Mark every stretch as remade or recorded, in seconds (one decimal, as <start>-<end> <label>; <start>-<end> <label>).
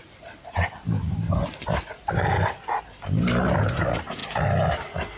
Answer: 0.0-4.2 remade; 4.2-5.2 recorded